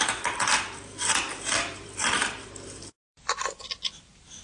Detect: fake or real fake